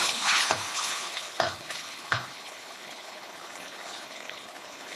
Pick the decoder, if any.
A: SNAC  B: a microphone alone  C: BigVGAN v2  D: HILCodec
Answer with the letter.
D